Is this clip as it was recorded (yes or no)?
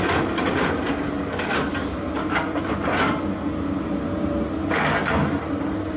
yes